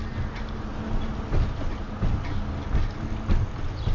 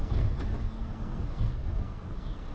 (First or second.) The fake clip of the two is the second